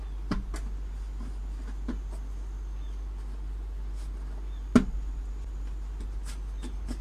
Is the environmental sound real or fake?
real